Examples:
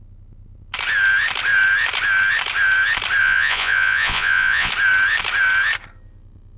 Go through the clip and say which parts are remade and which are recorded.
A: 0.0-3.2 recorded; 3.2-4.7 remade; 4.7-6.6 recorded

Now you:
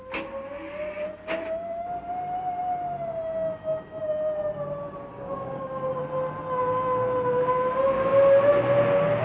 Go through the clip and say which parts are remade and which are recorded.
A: 0.0-5.1 recorded; 5.1-6.0 remade; 6.0-9.2 recorded

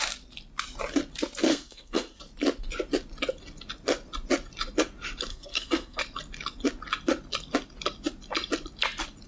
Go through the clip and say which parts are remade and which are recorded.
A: 0.0-1.5 recorded; 1.5-2.2 remade; 2.2-5.3 recorded; 5.3-6.0 remade; 6.0-9.3 recorded